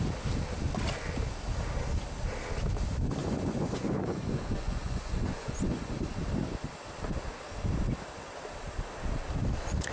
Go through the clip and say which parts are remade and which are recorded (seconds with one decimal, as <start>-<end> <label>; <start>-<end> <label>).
0.0-3.2 recorded; 3.2-5.9 remade; 5.9-9.9 recorded